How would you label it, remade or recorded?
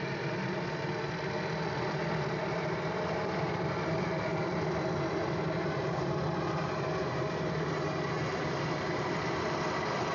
recorded